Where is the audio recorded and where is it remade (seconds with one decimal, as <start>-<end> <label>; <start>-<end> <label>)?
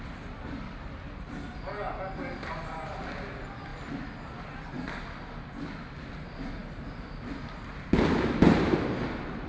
0.0-9.5 recorded